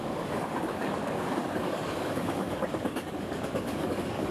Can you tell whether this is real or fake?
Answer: fake